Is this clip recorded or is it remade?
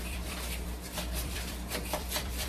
remade